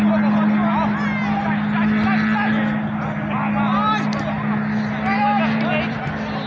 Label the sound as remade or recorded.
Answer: recorded